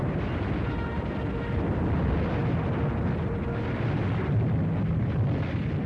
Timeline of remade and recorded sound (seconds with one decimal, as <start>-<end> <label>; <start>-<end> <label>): 0.0-5.9 recorded